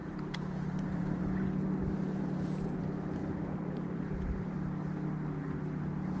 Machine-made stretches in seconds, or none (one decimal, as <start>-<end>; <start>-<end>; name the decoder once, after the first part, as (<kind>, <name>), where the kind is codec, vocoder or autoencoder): 0.0-1.2 (vocoder, BigVGAN v2); 1.8-2.8; 3.2-4.5

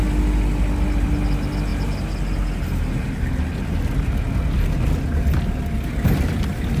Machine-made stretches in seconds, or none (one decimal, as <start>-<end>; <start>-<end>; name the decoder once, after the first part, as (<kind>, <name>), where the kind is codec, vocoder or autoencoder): none

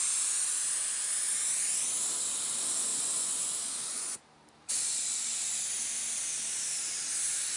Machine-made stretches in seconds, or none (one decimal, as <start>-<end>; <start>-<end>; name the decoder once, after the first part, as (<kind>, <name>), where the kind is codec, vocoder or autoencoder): 2.9-4.2 (vocoder, Vocos)

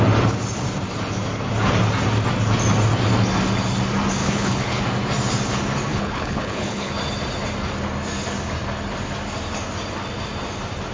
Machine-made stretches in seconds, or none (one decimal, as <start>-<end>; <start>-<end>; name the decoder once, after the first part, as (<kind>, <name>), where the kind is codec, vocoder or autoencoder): 4.2-4.8 (codec, HILCodec); 5.9-6.9

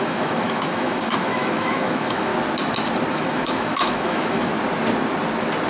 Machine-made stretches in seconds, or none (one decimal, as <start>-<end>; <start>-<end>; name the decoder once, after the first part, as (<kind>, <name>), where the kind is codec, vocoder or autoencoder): 0.0-2.3 (autoencoder, DAC-VAE); 3.1-4.5